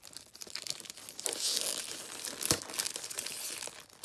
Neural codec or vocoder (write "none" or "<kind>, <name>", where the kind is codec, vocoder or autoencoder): none